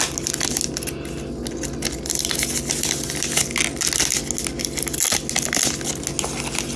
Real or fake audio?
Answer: real